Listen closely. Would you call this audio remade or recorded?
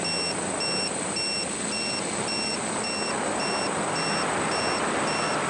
recorded